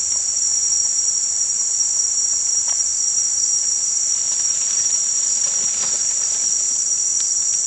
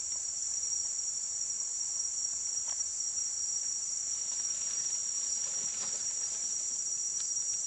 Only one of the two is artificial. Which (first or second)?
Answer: second